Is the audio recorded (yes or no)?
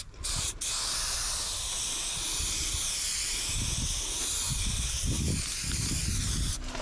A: yes